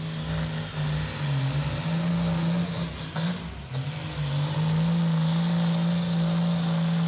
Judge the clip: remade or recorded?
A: recorded